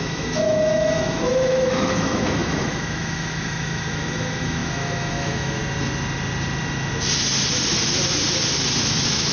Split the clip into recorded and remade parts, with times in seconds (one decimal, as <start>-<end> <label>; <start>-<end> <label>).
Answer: 0.0-5.6 remade; 5.6-8.8 recorded; 8.8-9.3 remade